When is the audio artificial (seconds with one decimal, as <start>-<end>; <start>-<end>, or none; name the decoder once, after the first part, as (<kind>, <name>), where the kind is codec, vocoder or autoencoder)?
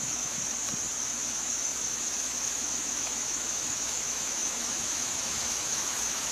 0.0-0.4 (autoencoder, DAC-VAE); 1.0-6.3